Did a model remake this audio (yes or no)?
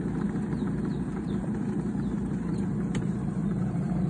yes